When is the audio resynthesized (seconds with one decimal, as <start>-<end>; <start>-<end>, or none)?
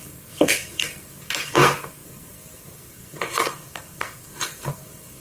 0.0-5.2